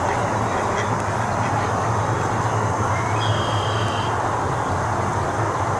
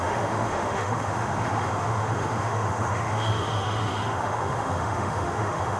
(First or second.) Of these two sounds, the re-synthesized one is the second